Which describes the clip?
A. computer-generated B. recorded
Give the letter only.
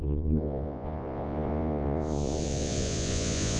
A